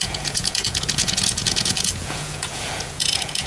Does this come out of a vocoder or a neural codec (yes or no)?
yes